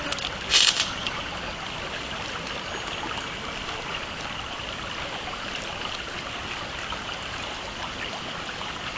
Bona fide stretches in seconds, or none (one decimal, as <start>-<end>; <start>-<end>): 0.0-0.5; 1.3-9.0